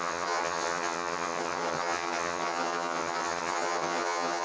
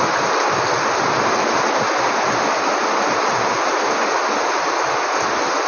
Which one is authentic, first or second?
second